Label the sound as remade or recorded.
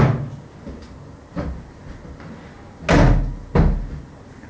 recorded